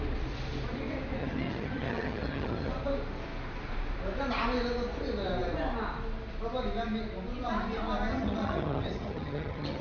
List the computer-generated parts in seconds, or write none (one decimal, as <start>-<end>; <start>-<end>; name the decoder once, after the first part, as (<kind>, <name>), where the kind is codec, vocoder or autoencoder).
1.2-2.7 (vocoder, HiFi-GAN); 8.1-9.8